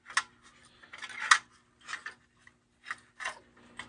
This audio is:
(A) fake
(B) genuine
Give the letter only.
B